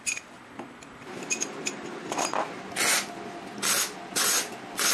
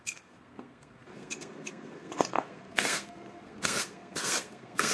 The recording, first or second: first